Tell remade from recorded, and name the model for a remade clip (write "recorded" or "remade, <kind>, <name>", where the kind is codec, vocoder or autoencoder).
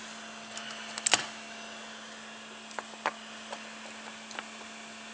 recorded